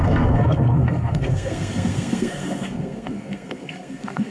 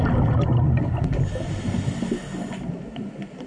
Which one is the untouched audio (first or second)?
second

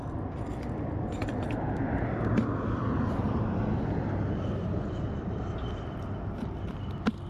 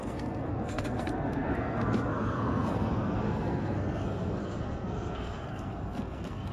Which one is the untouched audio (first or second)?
first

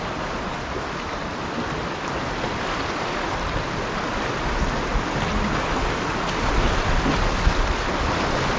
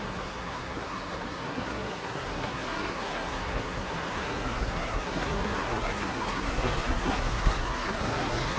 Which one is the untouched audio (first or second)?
first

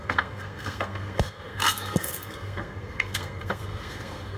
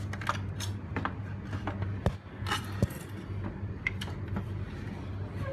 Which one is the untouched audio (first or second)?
second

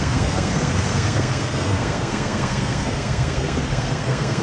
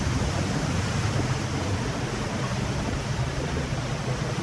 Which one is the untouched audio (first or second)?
second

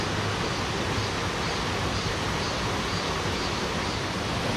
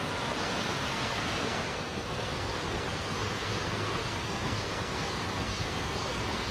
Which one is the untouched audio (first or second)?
first